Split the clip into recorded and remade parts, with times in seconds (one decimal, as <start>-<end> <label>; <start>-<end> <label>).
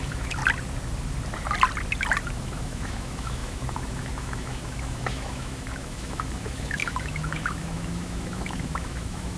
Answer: 0.0-0.4 remade; 0.4-2.4 recorded; 2.4-9.4 remade